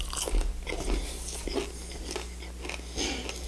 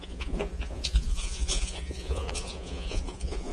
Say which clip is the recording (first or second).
first